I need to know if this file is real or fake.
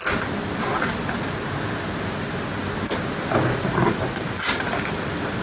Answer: real